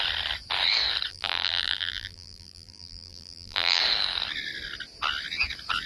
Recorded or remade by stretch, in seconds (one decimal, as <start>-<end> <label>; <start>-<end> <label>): 0.0-1.1 recorded; 1.1-3.8 remade; 3.8-5.9 recorded